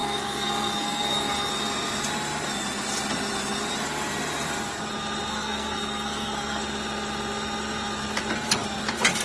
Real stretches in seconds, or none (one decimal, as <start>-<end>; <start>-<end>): 1.5-5.3; 6.6-9.2